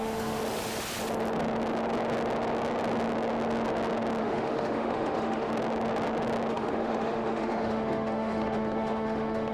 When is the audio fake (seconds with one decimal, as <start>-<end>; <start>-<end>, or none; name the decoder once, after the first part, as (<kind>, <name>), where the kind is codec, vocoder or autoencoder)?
0.0-0.4 (autoencoder, DAC-VAE); 4.2-5.5; 6.5-9.5